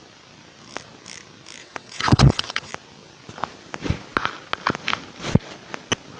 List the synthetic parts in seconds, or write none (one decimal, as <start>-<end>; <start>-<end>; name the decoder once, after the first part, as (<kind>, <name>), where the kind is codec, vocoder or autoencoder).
1.6-2.7 (vocoder, WaveNeXt)